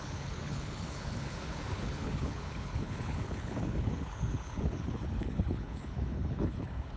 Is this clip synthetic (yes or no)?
yes